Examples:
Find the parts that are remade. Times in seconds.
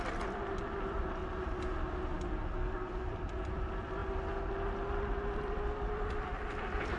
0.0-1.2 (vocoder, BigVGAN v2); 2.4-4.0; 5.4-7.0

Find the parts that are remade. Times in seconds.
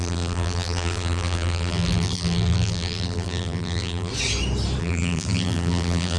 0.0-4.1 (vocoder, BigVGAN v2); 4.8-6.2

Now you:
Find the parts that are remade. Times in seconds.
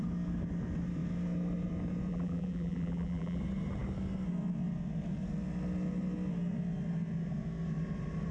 2.1-3.4 (vocoder, BigVGAN v2)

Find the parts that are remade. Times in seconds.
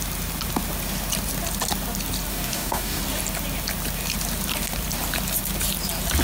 2.3-3.0 (codec, DAC)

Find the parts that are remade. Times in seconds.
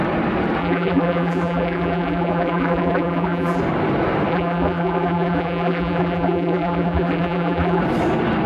0.6-3.6 (vocoder, BigVGAN v2); 4.3-7.8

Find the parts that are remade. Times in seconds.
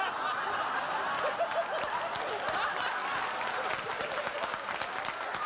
3.0-3.5 (vocoder, BigVGAN v2)